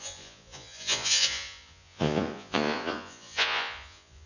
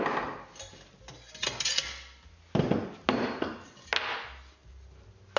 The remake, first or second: first